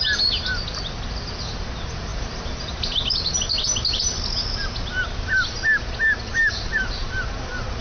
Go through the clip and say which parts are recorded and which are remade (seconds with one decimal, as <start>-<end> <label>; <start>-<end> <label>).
0.0-2.1 recorded; 2.1-2.7 remade; 2.7-7.8 recorded